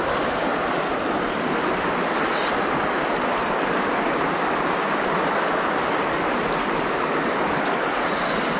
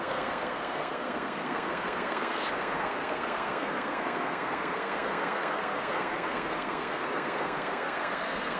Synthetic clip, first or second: second